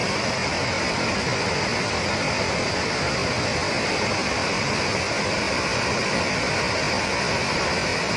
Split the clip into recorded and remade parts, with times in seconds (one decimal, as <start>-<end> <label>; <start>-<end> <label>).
0.0-3.3 remade; 3.3-4.2 recorded; 4.2-5.0 remade; 5.0-8.2 recorded